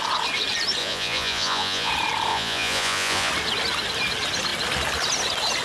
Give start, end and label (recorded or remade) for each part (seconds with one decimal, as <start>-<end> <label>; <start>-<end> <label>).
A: 0.0-0.8 recorded; 0.8-1.9 remade; 1.9-2.3 recorded; 2.3-3.3 remade; 3.3-5.6 recorded